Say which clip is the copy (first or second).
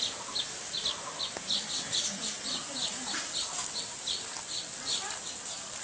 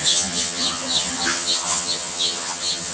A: second